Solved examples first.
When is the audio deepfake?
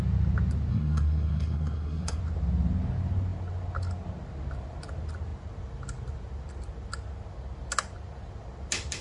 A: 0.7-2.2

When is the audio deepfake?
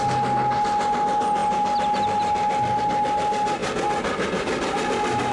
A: none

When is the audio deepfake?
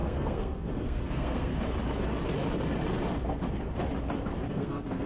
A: 0.0-1.5; 4.5-5.1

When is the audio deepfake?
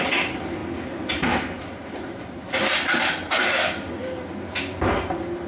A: none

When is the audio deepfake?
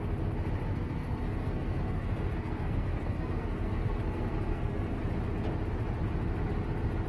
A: 0.7-5.0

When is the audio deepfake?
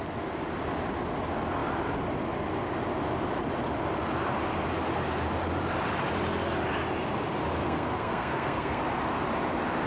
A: 7.6-8.8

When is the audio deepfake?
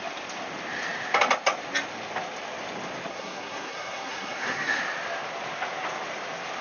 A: 3.1-4.8